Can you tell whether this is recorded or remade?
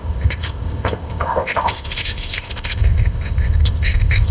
remade